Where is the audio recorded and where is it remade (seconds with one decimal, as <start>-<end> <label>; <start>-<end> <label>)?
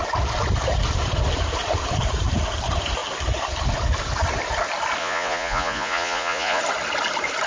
0.0-5.0 recorded; 5.0-6.6 remade; 6.6-7.5 recorded